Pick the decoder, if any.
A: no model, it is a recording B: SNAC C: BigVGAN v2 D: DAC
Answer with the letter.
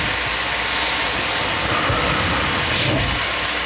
A